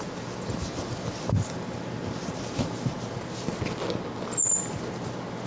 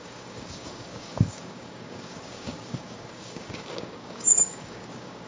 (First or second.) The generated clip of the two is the second